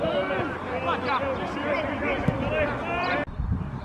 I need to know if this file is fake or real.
real